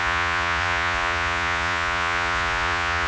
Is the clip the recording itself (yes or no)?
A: no